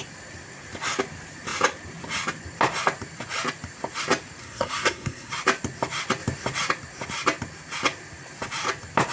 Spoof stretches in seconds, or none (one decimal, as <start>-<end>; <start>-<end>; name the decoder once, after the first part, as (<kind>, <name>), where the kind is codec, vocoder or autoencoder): 4.4-5.3 (codec, SNAC)